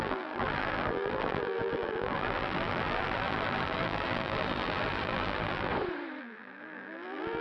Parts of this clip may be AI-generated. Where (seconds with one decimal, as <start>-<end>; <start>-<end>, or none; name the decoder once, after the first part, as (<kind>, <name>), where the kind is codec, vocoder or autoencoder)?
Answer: 0.0-5.7 (vocoder, BigVGAN v2); 6.2-7.4